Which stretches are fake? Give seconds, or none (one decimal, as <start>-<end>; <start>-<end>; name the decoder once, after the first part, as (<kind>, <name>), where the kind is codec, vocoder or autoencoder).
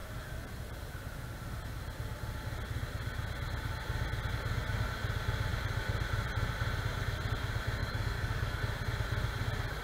7.8-8.6 (codec, DAC)